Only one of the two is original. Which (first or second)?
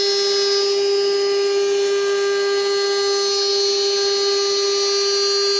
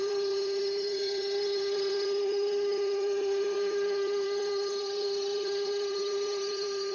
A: first